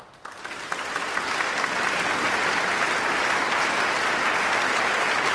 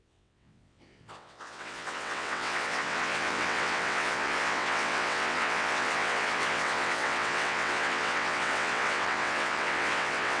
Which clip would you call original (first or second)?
first